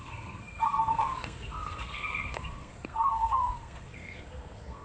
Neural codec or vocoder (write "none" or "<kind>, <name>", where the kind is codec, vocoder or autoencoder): codec, SNAC